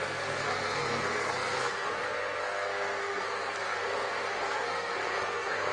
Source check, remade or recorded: remade